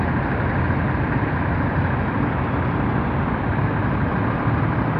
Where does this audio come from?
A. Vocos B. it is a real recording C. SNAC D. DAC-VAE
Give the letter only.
B